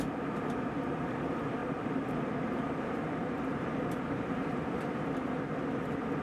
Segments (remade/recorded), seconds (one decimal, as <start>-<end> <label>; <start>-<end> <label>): 0.0-1.6 recorded; 1.6-5.3 remade; 5.3-6.2 recorded